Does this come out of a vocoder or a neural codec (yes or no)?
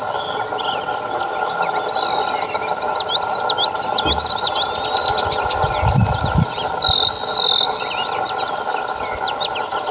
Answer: no